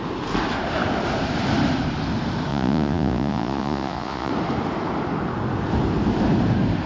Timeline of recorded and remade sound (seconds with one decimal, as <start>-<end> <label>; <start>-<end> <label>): 0.0-2.5 recorded; 2.5-4.3 remade; 4.3-6.9 recorded